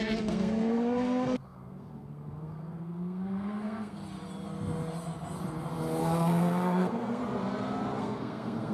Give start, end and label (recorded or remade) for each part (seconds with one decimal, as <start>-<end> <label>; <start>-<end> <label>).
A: 0.0-4.0 remade; 4.0-6.0 recorded; 6.0-7.2 remade; 7.2-8.0 recorded; 8.0-8.7 remade